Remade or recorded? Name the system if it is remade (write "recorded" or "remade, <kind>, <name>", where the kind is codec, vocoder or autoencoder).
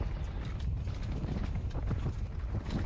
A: recorded